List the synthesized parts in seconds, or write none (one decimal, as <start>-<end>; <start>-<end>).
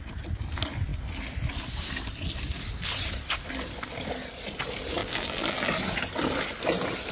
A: 5.0-5.7